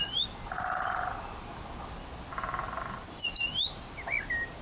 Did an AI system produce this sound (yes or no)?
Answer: no